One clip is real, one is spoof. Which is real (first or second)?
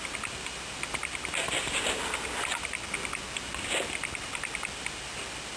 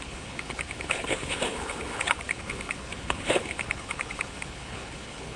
first